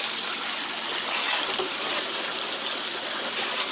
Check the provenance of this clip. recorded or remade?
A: recorded